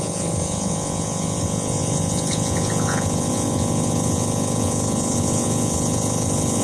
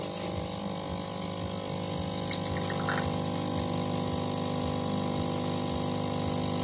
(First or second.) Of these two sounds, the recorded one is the second